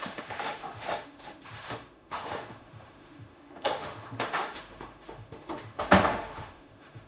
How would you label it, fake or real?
fake